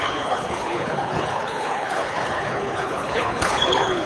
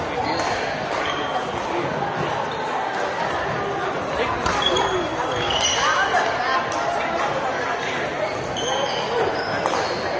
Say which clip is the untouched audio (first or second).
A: second